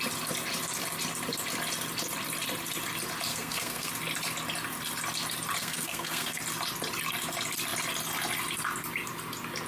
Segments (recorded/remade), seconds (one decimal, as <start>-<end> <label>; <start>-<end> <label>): 0.0-3.3 recorded; 3.3-3.9 remade; 3.9-5.6 recorded; 5.6-6.4 remade; 6.4-9.7 recorded

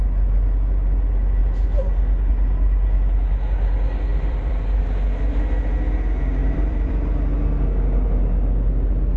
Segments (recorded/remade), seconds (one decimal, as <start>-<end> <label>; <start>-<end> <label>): 0.0-4.1 recorded; 4.1-4.8 remade; 4.8-6.4 recorded; 6.4-6.9 remade; 6.9-9.2 recorded

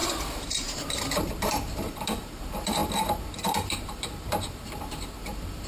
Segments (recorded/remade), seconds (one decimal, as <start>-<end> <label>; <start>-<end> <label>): 0.0-5.7 remade

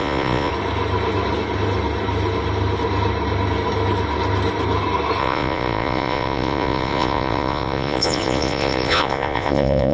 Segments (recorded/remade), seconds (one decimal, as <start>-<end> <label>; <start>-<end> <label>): 0.0-0.5 remade; 0.5-5.2 recorded; 5.2-9.9 remade